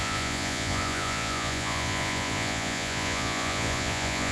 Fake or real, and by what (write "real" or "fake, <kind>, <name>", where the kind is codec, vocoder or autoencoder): fake, vocoder, Vocos